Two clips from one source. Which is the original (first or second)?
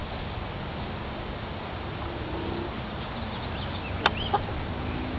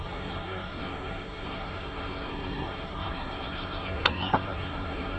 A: first